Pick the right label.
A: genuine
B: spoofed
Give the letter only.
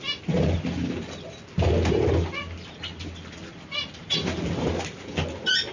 A